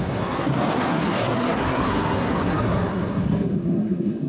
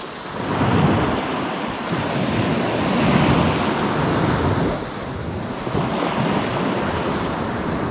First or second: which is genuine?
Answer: second